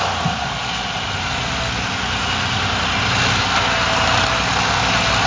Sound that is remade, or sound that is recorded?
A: recorded